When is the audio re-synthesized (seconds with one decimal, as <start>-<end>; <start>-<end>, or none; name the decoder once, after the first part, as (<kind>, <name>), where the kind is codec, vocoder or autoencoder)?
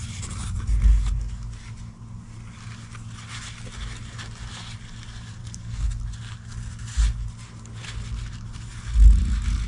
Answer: 5.4-5.9 (codec, SNAC)